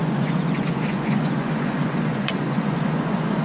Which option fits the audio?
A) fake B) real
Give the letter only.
A